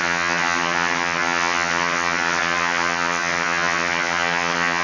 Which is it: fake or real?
fake